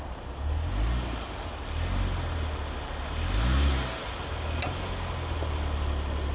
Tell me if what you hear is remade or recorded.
recorded